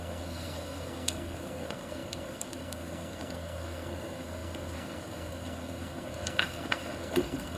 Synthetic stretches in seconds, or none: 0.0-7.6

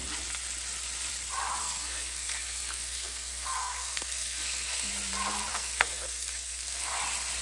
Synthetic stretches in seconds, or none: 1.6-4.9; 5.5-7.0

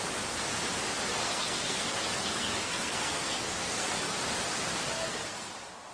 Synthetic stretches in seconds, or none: 1.1-4.2; 4.8-5.5